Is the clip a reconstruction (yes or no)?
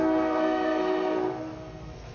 yes